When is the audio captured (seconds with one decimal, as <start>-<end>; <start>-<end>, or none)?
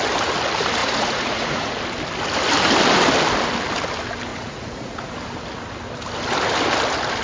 0.0-0.8; 1.8-4.3; 5.1-7.2